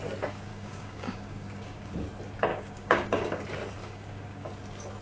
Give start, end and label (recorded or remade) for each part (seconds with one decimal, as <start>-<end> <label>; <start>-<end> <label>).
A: 0.0-0.5 recorded; 0.5-1.9 remade; 1.9-2.5 recorded; 2.5-3.4 remade; 3.4-3.8 recorded; 3.8-4.5 remade; 4.5-5.0 recorded